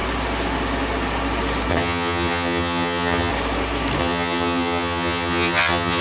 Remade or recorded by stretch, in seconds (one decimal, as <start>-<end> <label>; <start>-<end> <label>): 0.0-1.7 recorded; 1.7-3.3 remade; 3.3-4.0 recorded; 4.0-6.0 remade